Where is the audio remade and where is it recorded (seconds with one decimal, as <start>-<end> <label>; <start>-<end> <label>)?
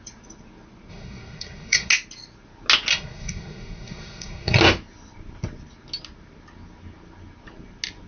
0.0-0.9 recorded; 0.9-1.9 remade; 1.9-2.9 recorded; 2.9-4.6 remade; 4.6-8.1 recorded